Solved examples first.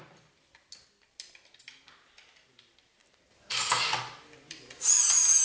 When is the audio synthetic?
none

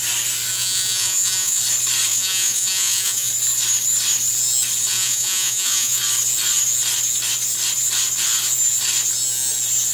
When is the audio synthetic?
0.5-1.6 (vocoder, Vocos); 2.1-3.3; 4.9-6.0

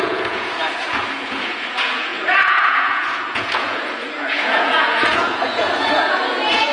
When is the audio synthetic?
0.0-6.7 (vocoder, Vocos)

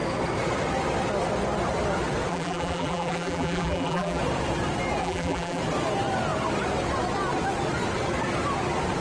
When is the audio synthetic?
2.3-4.2 (vocoder, BigVGAN v2); 5.0-5.6

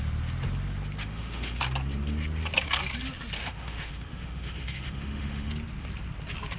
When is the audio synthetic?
1.0-1.6 (autoencoder, DAC-VAE); 3.4-5.5